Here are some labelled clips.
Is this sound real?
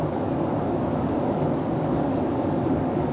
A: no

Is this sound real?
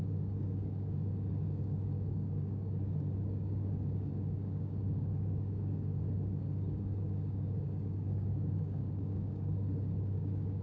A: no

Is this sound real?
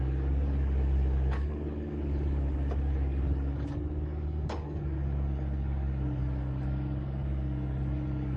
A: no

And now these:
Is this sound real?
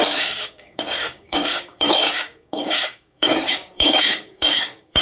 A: no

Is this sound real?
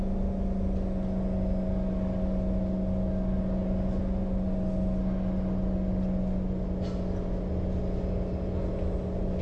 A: yes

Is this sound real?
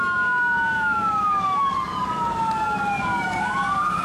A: no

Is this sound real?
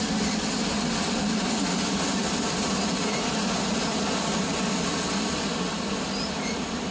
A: yes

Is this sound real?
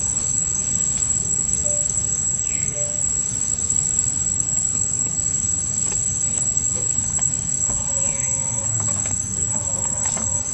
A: no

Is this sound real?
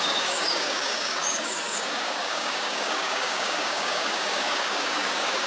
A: no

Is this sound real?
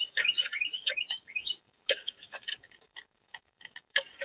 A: no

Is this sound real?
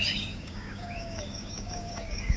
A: no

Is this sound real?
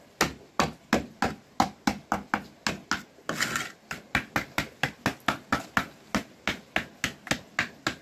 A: yes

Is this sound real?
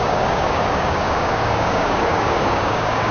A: no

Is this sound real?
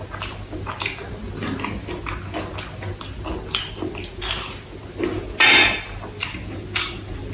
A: yes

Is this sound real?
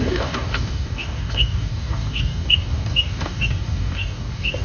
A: no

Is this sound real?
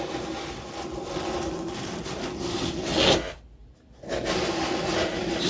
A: yes